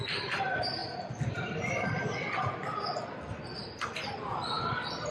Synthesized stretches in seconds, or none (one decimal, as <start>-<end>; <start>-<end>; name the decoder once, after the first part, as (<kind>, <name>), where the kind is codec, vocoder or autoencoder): 0.0-0.8 (vocoder, BigVGAN v2); 1.3-2.0; 3.4-5.1